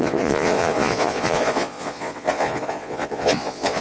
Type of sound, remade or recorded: remade